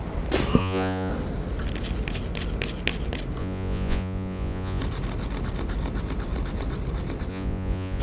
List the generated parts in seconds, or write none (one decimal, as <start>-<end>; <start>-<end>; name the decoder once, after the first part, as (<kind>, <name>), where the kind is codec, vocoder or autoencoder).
0.6-1.1 (vocoder, Vocos); 3.4-4.8; 7.3-8.0